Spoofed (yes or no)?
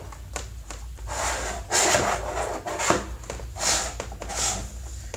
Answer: no